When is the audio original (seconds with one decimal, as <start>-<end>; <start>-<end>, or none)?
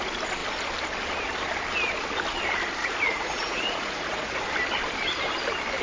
0.0-2.8; 4.4-5.8